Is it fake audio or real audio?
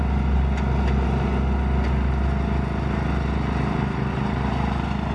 real